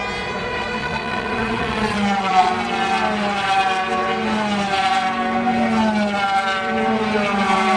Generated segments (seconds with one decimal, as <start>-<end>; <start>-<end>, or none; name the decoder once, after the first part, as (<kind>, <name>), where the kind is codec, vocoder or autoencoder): 0.8-2.5 (vocoder, Vocos)